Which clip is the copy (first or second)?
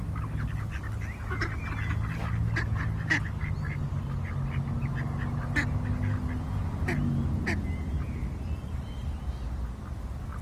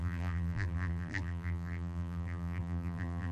second